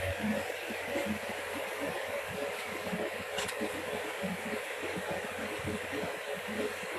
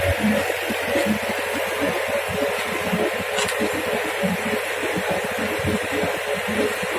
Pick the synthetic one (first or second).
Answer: first